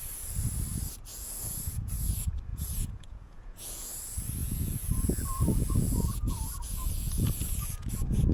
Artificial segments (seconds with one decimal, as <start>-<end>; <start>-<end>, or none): 1.1-1.9; 2.5-3.9; 4.4-7.9